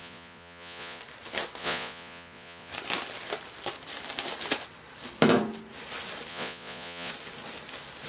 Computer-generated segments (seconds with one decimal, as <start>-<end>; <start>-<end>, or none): 0.0-1.0; 1.6-2.7; 6.3-7.1